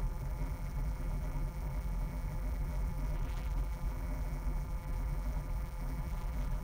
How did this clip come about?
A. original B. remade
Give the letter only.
B